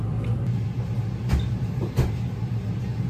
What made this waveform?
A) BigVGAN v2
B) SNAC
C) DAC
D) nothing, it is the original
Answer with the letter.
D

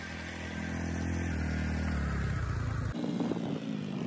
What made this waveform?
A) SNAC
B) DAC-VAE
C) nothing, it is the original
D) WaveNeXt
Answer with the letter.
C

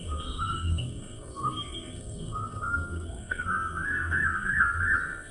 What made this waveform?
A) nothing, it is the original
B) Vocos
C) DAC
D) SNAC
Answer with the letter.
D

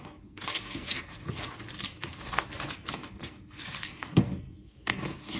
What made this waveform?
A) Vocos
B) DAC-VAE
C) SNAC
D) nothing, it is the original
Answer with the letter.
C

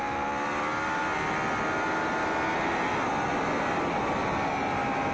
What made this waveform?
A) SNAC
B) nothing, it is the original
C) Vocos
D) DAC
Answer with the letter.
B